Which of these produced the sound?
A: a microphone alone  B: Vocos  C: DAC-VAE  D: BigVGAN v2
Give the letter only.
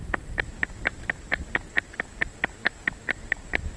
D